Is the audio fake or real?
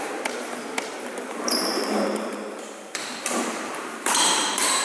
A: fake